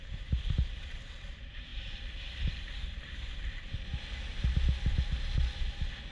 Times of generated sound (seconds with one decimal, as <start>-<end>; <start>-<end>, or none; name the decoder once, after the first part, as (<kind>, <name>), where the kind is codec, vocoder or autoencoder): 0.0-3.9 (vocoder, BigVGAN v2)